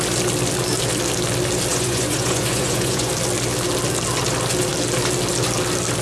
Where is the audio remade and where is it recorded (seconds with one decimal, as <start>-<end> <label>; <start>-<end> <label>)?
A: 0.0-1.7 recorded; 1.7-3.1 remade; 3.1-6.0 recorded